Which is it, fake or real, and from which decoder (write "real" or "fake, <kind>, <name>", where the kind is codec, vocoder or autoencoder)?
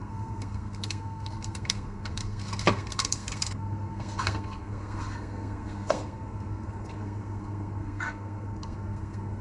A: fake, codec, SNAC